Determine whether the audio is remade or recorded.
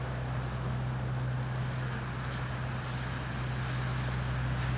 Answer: recorded